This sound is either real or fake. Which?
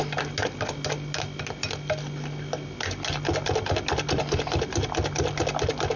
real